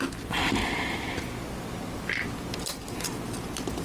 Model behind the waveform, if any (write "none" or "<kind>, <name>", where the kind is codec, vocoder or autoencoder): none